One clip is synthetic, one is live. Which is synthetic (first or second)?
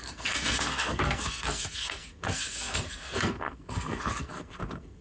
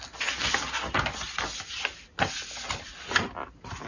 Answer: first